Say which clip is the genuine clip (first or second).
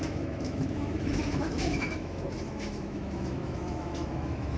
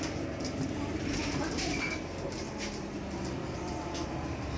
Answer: second